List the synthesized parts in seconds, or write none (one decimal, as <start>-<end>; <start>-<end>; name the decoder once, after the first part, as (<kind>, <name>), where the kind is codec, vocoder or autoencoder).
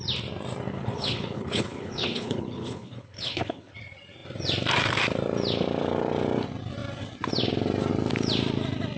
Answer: 0.7-3.7 (codec, HILCodec)